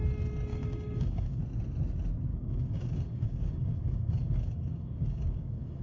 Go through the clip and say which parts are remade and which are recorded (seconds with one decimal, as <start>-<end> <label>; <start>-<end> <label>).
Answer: 0.0-0.5 recorded; 0.5-1.4 remade; 1.4-2.3 recorded; 2.3-5.8 remade